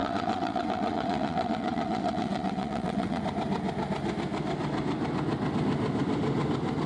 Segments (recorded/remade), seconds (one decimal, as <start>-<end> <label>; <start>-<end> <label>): 0.0-3.2 remade; 3.2-6.9 recorded